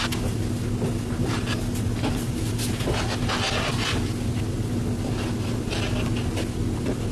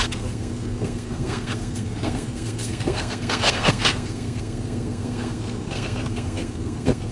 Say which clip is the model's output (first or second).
second